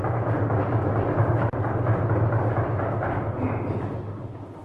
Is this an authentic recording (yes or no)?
yes